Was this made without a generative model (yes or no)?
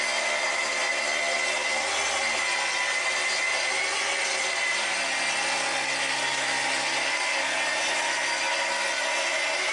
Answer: yes